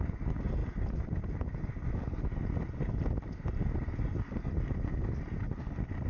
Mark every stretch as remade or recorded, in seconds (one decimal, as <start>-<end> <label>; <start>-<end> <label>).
0.0-6.1 recorded